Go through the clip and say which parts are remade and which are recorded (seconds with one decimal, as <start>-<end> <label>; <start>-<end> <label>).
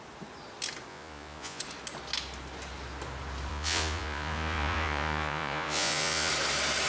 0.0-0.9 recorded; 0.9-1.6 remade; 1.6-3.5 recorded; 3.5-6.3 remade; 6.3-6.9 recorded